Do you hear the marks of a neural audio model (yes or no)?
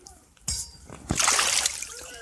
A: yes